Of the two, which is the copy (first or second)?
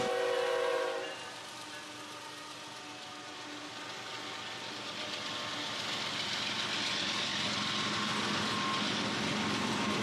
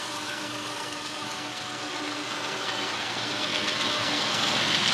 second